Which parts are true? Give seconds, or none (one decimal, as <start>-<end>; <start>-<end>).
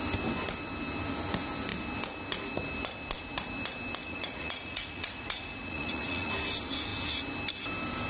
0.0-4.0; 6.3-8.1